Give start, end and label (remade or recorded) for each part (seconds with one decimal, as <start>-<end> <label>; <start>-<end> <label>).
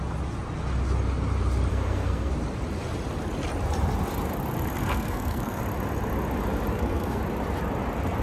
0.0-1.7 recorded; 1.7-2.3 remade; 2.3-4.8 recorded; 4.8-5.6 remade; 5.6-6.7 recorded; 6.7-7.2 remade; 7.2-8.2 recorded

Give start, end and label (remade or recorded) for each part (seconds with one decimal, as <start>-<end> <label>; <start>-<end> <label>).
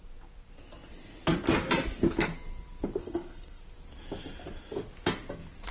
0.0-3.0 recorded; 3.0-3.6 remade; 3.6-5.7 recorded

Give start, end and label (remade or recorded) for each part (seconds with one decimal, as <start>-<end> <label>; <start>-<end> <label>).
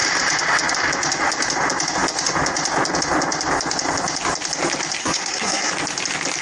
0.0-5.0 recorded; 5.0-5.7 remade; 5.7-6.4 recorded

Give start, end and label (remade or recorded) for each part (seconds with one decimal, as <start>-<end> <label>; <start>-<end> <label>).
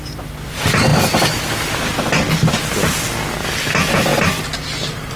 0.0-5.2 recorded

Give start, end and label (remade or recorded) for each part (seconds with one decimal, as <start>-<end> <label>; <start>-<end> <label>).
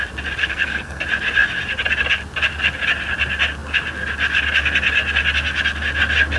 0.0-0.4 recorded; 0.4-1.0 remade; 1.0-6.4 recorded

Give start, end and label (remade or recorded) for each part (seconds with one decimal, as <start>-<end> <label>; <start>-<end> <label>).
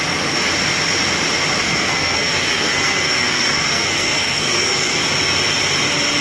0.0-1.6 recorded; 1.6-5.0 remade; 5.0-6.2 recorded